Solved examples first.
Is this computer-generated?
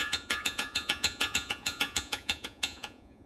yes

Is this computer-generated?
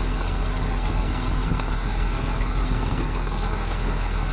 yes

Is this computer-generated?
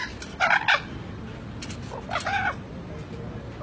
no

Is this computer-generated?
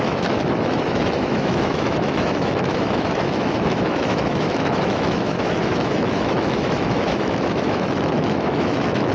yes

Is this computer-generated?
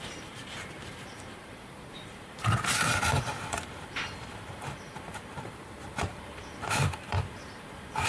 yes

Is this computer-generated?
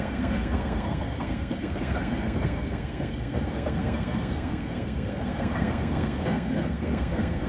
yes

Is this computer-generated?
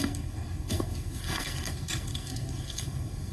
yes